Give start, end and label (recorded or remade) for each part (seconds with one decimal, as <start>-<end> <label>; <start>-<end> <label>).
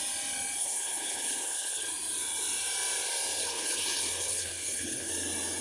0.0-0.6 recorded; 0.6-1.9 remade; 1.9-3.4 recorded; 3.4-5.1 remade; 5.1-5.6 recorded